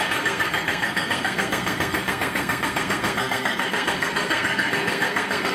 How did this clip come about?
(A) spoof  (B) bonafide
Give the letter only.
A